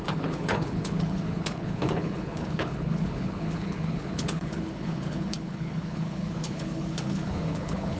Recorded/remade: remade